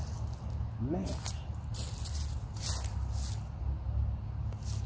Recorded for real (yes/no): yes